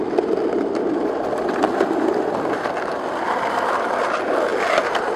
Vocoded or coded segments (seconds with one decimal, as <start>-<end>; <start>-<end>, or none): none